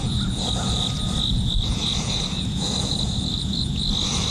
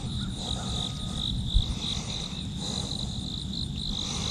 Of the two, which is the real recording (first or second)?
second